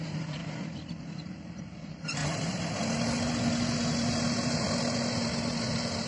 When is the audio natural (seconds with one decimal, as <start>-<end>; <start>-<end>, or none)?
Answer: 0.4-0.9; 2.2-6.1